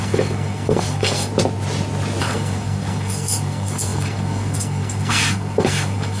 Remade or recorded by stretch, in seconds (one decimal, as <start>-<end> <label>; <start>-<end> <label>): 0.0-1.3 remade; 1.3-2.2 recorded; 2.2-6.2 remade